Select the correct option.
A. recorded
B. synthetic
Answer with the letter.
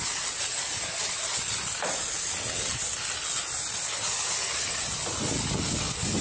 A